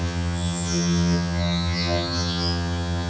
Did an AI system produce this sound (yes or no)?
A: yes